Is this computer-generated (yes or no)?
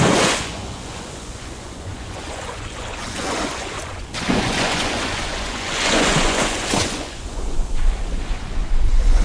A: yes